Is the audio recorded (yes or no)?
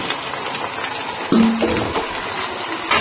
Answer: yes